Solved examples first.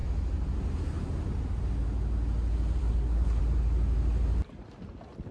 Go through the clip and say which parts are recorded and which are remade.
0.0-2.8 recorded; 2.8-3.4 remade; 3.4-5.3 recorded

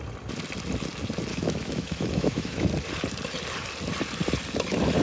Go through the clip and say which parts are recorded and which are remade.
0.0-1.3 recorded; 1.3-2.7 remade; 2.7-5.0 recorded

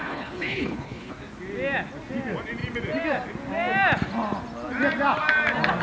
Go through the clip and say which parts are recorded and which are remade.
0.0-1.1 remade; 1.1-5.8 recorded

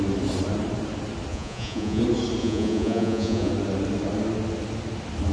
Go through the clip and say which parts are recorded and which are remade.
0.0-1.3 recorded; 1.3-2.0 remade; 2.0-2.4 recorded; 2.4-3.5 remade; 3.5-5.3 recorded

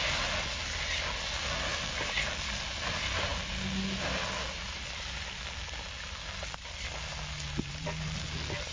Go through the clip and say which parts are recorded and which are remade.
0.0-8.7 recorded

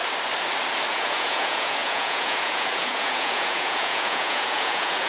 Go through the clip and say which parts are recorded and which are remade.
0.0-0.9 recorded; 0.9-5.1 remade